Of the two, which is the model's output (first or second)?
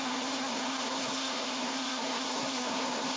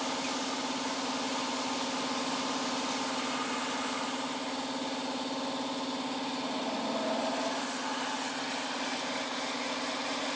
first